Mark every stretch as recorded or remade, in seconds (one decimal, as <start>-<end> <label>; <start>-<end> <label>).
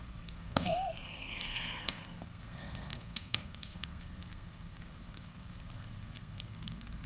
0.0-7.1 remade